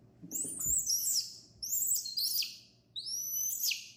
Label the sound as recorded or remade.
remade